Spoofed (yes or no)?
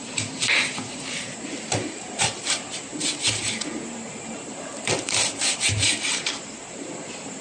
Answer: yes